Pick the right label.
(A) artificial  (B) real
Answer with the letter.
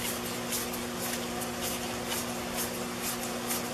B